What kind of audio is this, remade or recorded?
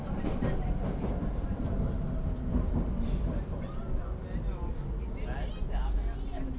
recorded